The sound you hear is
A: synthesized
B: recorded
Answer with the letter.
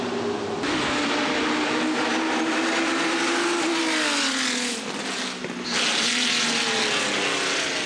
B